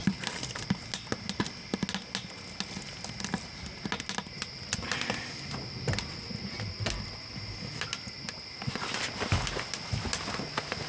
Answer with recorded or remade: recorded